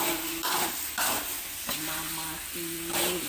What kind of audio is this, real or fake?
real